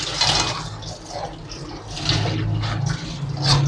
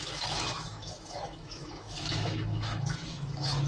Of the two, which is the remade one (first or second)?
second